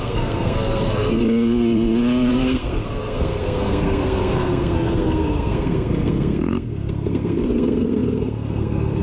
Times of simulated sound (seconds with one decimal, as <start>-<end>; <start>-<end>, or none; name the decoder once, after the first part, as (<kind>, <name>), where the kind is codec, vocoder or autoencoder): 0.0-1.2 (codec, SNAC); 2.3-9.0

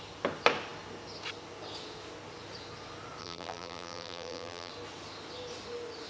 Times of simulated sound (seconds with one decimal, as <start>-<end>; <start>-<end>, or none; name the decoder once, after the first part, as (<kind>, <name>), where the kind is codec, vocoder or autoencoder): 3.2-4.7 (vocoder, BigVGAN v2)